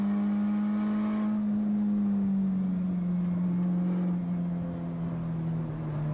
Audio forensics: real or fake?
real